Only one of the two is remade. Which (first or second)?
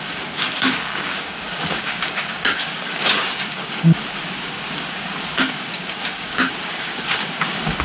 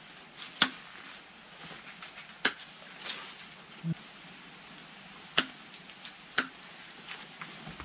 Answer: first